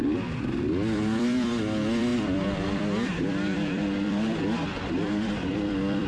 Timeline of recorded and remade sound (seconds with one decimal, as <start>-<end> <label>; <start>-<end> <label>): 0.0-6.1 remade